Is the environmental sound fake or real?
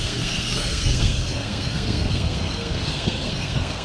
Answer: fake